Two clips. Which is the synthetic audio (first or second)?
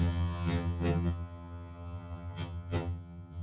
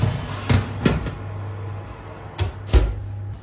first